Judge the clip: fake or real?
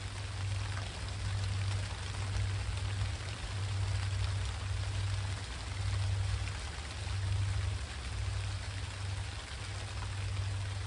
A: real